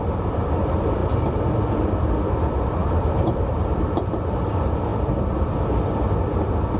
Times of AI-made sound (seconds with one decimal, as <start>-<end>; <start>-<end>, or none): 2.8-3.5